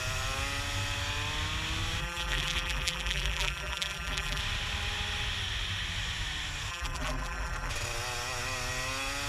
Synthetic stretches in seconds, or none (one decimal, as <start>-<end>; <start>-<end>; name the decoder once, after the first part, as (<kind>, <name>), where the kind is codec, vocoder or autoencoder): 2.0-4.4 (vocoder, BigVGAN v2); 6.7-7.7